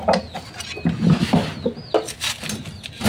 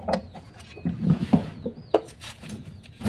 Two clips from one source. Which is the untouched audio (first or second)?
first